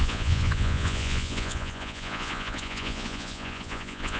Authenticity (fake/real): fake